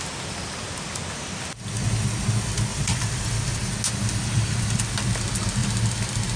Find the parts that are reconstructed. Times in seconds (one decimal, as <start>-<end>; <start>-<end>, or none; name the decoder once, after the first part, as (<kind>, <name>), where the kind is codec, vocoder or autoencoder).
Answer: 2.7-3.4 (vocoder, BigVGAN v2); 4.0-4.8